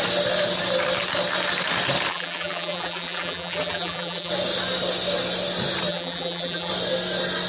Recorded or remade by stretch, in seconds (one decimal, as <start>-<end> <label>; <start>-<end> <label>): 0.0-2.1 recorded; 2.1-4.3 remade; 4.3-5.9 recorded; 5.9-6.7 remade; 6.7-7.5 recorded

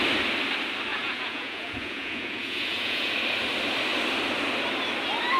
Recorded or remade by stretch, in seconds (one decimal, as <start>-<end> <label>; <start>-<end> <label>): 0.0-0.9 recorded; 0.9-3.1 remade; 3.1-5.4 recorded

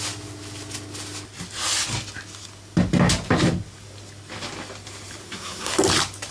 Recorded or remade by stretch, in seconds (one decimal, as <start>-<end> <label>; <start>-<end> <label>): 0.0-5.2 recorded; 5.2-5.7 remade; 5.7-6.3 recorded